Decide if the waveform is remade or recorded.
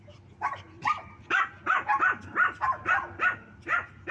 recorded